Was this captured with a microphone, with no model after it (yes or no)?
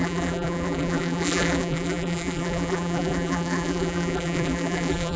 no